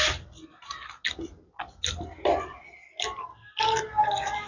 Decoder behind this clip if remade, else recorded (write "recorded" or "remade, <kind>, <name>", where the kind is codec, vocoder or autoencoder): recorded